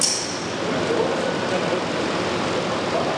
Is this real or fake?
real